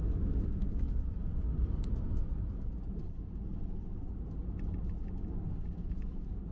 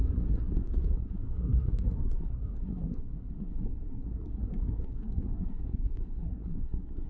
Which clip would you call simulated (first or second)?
second